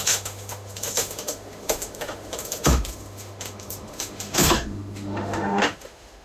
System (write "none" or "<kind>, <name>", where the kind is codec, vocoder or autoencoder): autoencoder, DAC-VAE